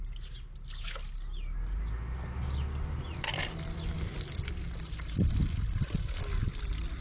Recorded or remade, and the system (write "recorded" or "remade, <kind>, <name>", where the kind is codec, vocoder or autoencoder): recorded